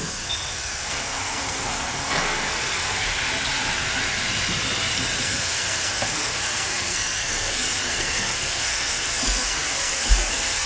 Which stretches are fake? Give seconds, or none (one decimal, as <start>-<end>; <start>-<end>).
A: 0.0-3.1; 5.2-10.7